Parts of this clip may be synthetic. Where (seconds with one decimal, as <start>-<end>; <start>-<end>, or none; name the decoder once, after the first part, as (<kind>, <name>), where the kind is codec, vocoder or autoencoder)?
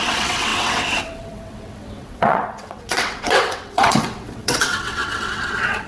0.0-5.9 (vocoder, WaveNeXt)